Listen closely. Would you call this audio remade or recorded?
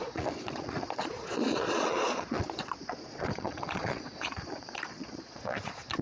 remade